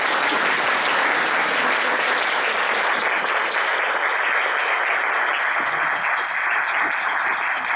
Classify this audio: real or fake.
real